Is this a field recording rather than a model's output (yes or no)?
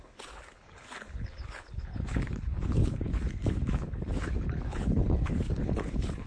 no